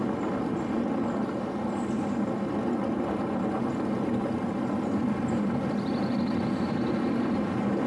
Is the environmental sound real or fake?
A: fake